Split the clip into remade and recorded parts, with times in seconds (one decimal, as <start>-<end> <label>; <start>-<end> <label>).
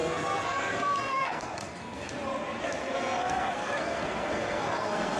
0.0-2.1 remade; 2.1-2.8 recorded; 2.8-5.2 remade